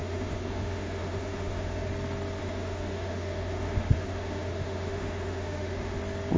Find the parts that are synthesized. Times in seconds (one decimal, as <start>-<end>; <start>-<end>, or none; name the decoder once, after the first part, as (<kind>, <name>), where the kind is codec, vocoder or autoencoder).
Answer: 0.0-1.9 (autoencoder, DAC-VAE); 2.4-6.0